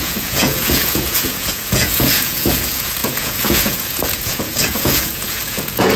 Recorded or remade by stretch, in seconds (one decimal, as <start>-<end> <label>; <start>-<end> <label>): 0.0-6.0 remade